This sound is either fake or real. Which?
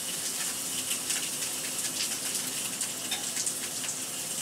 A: real